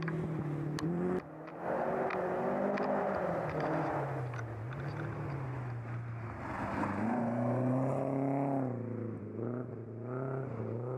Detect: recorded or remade recorded